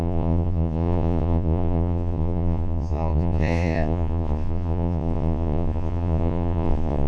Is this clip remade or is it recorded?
remade